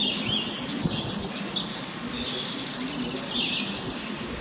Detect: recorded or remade recorded